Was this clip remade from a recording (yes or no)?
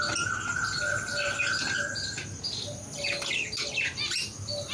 no